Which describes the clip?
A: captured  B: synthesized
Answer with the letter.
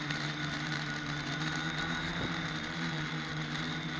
B